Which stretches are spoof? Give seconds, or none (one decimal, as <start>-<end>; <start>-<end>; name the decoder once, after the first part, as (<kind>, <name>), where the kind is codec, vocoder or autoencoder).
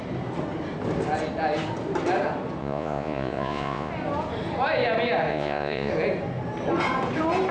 2.6-3.9 (vocoder, Vocos); 5.3-5.9